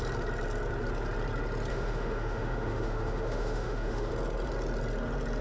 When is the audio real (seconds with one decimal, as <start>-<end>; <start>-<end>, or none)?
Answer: 0.0-1.7; 4.1-5.4

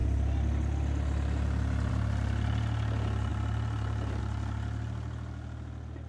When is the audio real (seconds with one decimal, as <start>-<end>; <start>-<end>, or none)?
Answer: 0.0-6.1

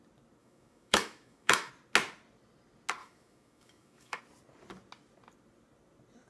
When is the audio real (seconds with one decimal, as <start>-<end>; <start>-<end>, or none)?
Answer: 0.0-0.4; 1.7-3.0; 4.2-6.3

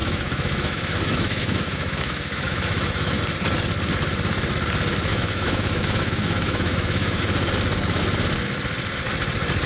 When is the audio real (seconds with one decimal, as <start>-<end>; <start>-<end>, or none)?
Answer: 3.2-5.1; 7.2-9.7

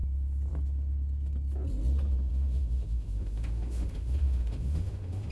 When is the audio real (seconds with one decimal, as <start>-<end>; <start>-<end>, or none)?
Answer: 0.0-2.3

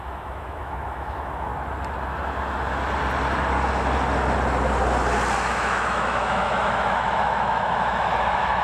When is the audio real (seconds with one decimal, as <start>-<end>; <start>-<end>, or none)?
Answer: 1.5-5.5